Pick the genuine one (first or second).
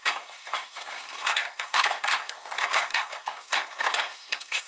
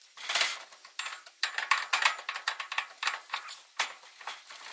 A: second